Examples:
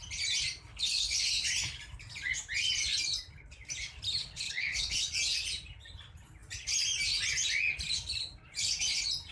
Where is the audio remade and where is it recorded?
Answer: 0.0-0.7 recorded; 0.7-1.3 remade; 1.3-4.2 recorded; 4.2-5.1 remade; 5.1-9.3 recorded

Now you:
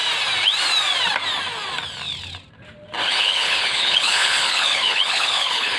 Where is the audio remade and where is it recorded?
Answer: 0.0-3.1 recorded; 3.1-5.8 remade

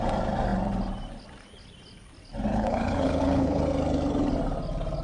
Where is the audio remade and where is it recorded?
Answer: 0.0-2.5 recorded; 2.5-3.6 remade; 3.6-5.0 recorded